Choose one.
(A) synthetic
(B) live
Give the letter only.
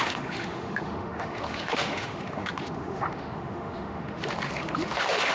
A